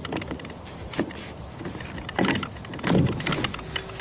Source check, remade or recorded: recorded